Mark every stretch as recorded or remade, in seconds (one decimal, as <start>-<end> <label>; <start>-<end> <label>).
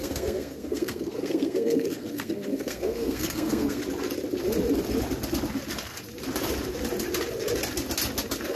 0.0-3.8 remade; 3.8-8.5 recorded